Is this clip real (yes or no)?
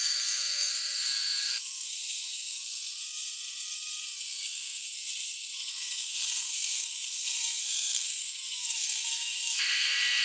no